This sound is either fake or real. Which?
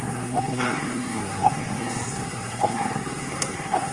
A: fake